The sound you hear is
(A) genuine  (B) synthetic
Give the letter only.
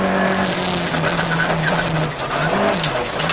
A